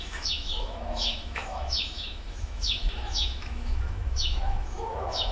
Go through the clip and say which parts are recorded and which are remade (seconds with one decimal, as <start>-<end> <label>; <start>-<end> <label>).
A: 0.0-5.3 remade